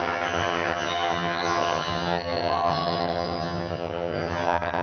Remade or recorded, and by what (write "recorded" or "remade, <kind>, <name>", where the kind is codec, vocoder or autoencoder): remade, vocoder, HiFi-GAN